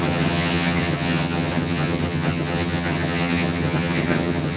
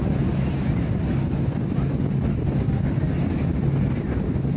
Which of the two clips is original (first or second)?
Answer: second